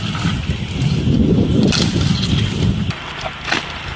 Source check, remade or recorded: recorded